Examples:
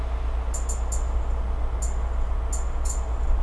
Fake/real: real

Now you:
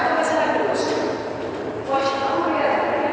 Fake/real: real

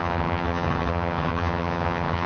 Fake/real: fake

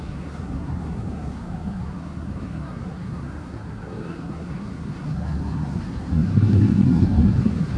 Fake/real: fake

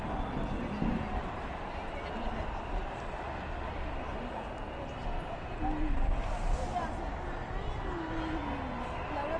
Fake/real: real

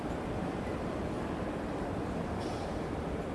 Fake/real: fake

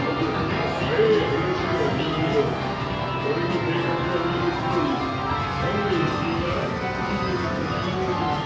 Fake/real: real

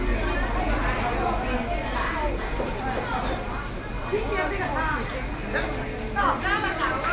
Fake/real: real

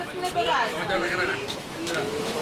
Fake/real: fake